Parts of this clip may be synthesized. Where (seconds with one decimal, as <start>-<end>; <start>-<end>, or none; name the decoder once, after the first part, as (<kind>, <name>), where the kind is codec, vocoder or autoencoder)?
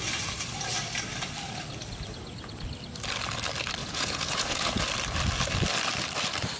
3.8-4.8 (vocoder, Vocos)